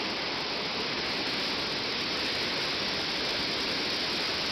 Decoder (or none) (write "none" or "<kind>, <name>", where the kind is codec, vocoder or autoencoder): none